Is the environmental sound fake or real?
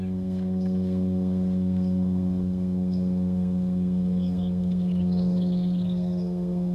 fake